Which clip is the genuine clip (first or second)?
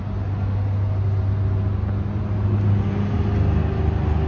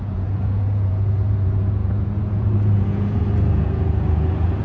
first